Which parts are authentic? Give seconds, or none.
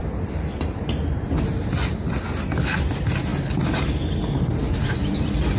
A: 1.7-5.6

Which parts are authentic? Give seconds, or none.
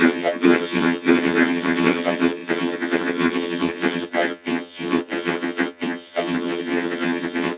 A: none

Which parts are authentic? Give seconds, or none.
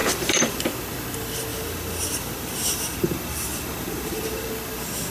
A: 0.6-1.5; 4.5-5.1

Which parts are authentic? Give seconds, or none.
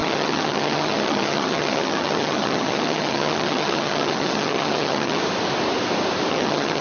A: 5.2-6.3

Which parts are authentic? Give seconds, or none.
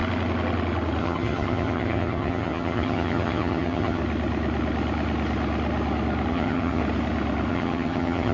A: 0.0-1.0; 4.0-6.3; 6.8-7.5